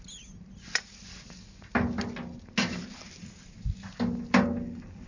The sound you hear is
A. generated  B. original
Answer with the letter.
B